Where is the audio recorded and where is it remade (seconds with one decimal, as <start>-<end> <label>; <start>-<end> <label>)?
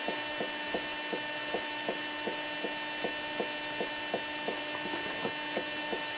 0.0-5.2 remade; 5.2-5.8 recorded; 5.8-6.2 remade